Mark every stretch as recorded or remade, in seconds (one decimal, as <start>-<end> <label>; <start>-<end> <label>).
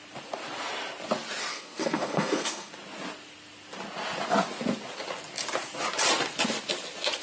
0.0-1.5 recorded; 1.5-2.7 remade; 2.7-7.2 recorded